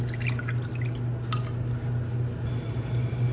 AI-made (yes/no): no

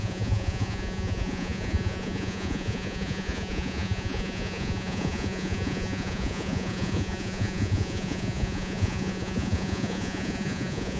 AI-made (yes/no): yes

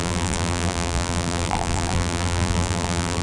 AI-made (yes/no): yes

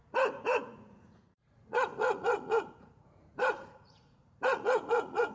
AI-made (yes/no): yes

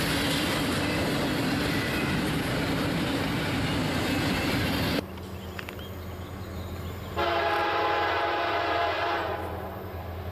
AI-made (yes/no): no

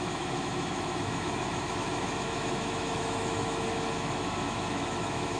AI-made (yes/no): yes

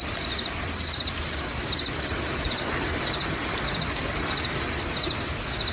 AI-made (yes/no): no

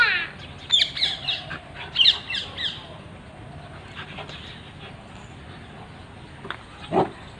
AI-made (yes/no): no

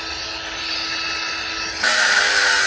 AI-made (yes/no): no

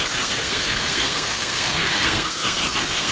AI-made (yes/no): yes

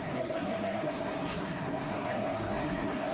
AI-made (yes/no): yes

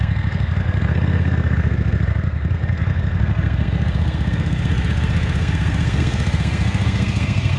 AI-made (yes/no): yes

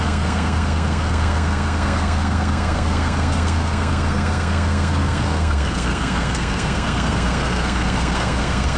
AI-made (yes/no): yes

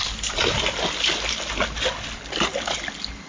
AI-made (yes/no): no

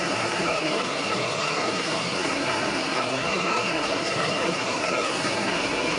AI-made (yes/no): yes